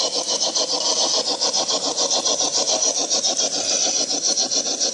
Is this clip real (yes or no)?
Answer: no